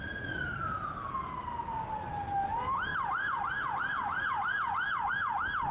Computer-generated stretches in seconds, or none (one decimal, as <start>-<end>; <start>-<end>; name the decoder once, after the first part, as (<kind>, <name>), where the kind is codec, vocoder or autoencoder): none